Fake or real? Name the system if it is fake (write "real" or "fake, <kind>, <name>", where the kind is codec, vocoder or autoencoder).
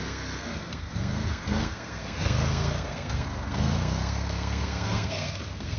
fake, codec, SNAC